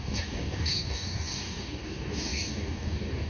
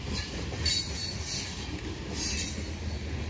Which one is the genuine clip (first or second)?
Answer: second